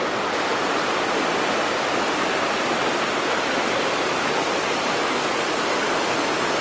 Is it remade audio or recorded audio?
recorded